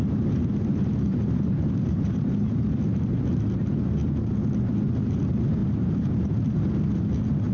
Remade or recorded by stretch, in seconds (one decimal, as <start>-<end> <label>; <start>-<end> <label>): 0.0-0.7 recorded; 0.7-2.4 remade; 2.4-5.6 recorded; 5.6-7.0 remade; 7.0-7.5 recorded